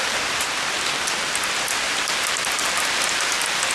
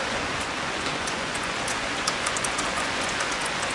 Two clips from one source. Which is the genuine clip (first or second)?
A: first